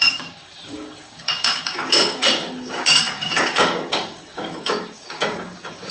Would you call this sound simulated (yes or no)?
yes